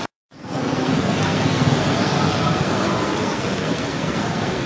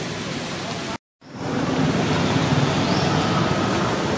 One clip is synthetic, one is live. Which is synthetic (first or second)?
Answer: first